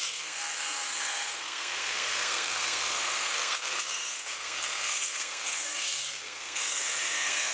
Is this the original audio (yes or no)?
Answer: no